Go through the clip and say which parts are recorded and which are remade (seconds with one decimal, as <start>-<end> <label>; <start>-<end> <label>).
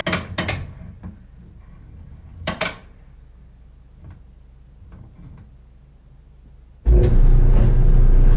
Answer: 0.0-2.3 recorded; 2.3-2.8 remade; 2.8-8.4 recorded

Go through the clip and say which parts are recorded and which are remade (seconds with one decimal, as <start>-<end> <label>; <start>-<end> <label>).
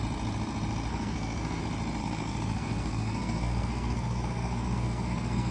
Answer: 0.0-0.9 recorded; 0.9-1.6 remade; 1.6-2.0 recorded; 2.0-5.5 remade